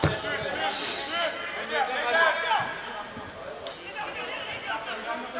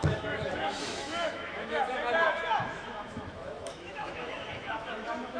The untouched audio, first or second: first